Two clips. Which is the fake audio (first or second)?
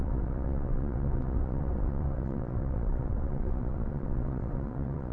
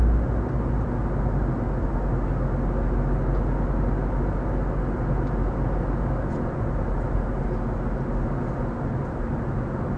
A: first